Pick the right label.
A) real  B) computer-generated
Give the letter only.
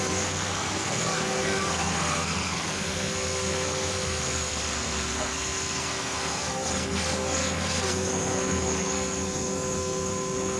B